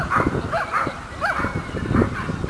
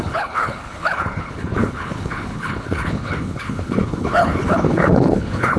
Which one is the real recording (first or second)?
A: first